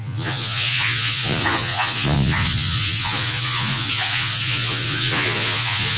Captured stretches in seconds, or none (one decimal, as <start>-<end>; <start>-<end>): none